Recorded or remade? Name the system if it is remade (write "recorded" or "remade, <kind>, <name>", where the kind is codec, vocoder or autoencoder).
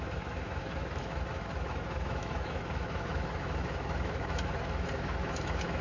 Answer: remade, autoencoder, DAC-VAE